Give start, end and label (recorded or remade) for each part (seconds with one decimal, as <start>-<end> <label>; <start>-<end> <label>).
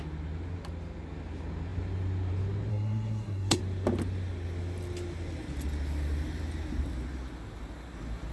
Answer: 0.0-2.7 recorded; 2.7-3.6 remade; 3.6-8.3 recorded